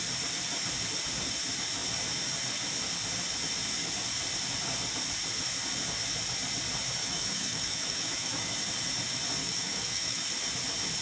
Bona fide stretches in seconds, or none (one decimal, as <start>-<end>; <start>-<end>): 0.0-7.0; 8.6-9.4; 10.3-11.0